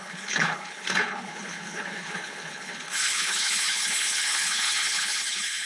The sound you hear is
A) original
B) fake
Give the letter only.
B